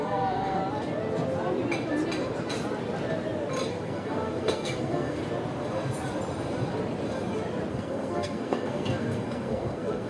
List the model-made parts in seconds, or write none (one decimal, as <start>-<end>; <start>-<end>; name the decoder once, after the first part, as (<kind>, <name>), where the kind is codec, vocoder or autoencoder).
0.0-0.6 (codec, SNAC); 3.7-5.2; 7.7-10.1